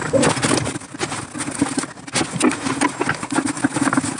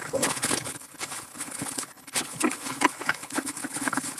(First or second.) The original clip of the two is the first